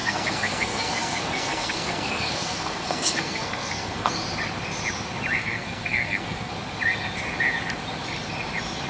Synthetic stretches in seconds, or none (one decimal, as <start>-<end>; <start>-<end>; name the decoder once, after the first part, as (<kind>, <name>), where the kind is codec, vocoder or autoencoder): 0.0-4.1 (codec, SNAC); 5.4-6.5

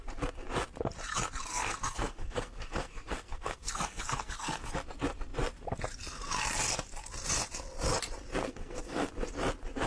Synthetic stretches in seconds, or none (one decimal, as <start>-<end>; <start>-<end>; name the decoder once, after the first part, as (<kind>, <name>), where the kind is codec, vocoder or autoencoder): 1.5-4.7 (codec, SNAC); 8.4-9.1

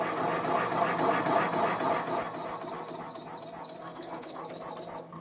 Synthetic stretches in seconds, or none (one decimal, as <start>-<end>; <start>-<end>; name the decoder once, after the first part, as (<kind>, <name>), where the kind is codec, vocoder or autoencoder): 3.8-4.4 (codec, SNAC)

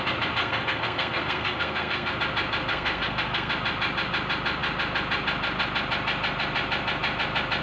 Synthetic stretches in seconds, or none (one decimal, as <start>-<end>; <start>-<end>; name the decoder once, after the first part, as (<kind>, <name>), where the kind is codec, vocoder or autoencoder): 0.4-2.1 (codec, SNAC); 2.7-3.5

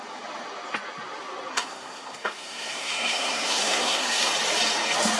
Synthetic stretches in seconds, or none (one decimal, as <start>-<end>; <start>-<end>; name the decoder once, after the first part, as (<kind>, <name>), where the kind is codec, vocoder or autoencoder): 1.5-4.3 (codec, SNAC)